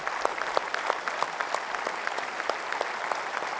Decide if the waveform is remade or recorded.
recorded